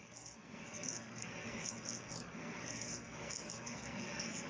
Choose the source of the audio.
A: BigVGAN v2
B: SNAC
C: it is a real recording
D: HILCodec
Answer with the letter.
B